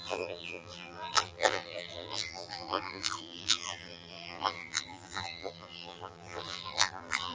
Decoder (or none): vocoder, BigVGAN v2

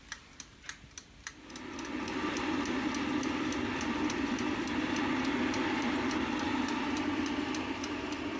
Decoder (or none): vocoder, BigVGAN v2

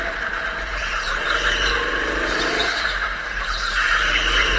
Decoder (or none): vocoder, BigVGAN v2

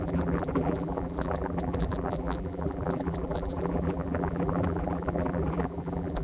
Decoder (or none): vocoder, BigVGAN v2